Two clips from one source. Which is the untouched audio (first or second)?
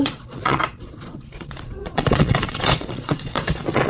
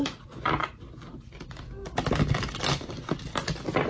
second